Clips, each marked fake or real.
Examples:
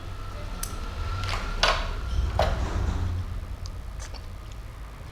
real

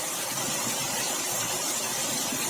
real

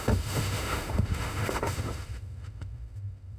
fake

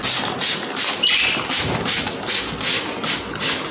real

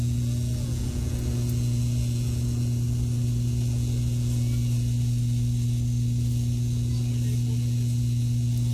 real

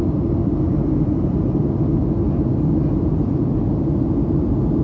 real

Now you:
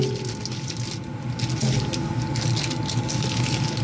real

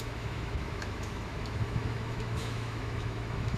fake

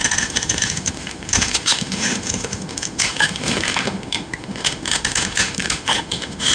fake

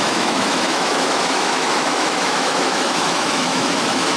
fake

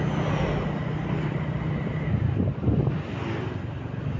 real